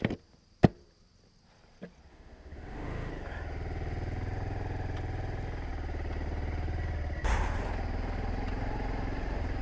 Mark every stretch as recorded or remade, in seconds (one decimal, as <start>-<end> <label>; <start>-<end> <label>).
0.0-2.1 recorded; 2.1-3.1 remade; 3.1-9.6 recorded